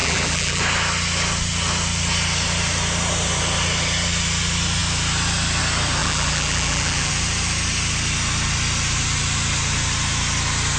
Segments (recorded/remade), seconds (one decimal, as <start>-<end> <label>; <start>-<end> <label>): 0.0-0.6 remade; 0.6-6.0 recorded; 6.0-7.1 remade; 7.1-10.8 recorded

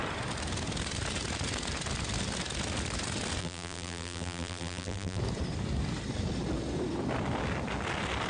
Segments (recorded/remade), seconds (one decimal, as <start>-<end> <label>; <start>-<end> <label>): 0.0-3.4 recorded; 3.4-5.2 remade; 5.2-8.3 recorded

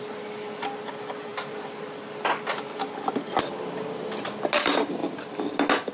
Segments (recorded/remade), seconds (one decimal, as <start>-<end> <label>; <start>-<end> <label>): 0.0-1.3 recorded; 1.3-1.8 remade; 1.8-5.0 recorded; 5.0-5.9 remade

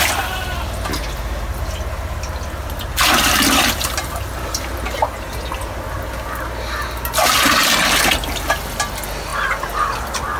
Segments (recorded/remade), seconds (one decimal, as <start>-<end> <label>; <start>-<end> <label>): 0.0-10.4 recorded